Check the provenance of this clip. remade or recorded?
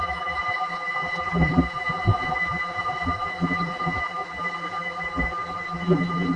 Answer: remade